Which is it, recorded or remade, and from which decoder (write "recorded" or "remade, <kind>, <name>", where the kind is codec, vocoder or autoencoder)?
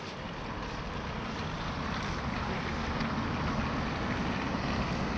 recorded